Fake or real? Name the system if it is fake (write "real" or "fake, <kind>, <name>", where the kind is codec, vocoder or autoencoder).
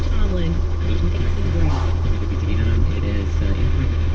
real